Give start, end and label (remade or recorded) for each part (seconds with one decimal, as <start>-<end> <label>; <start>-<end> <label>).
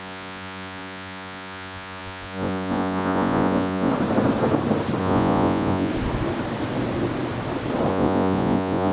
0.0-3.9 remade; 3.9-5.0 recorded; 5.0-5.9 remade; 5.9-7.9 recorded; 7.9-8.9 remade